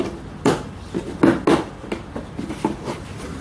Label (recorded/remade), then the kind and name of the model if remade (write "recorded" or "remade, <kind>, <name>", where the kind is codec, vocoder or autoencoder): recorded